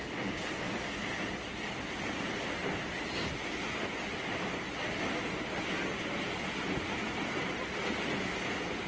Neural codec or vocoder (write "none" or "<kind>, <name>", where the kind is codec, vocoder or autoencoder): none